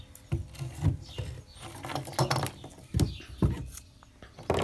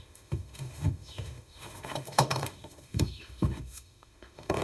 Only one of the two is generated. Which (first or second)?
second